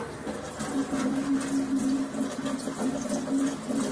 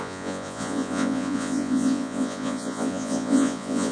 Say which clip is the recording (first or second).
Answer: first